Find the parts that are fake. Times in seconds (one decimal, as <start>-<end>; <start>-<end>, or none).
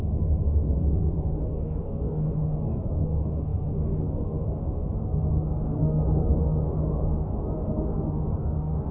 0.0-8.9